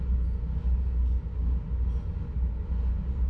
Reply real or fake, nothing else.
real